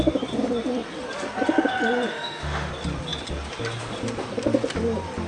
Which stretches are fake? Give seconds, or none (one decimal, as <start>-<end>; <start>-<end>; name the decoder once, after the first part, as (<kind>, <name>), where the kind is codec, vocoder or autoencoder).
2.1-2.7 (autoencoder, DAC-VAE)